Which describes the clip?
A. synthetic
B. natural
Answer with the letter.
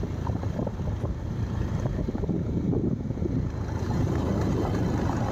A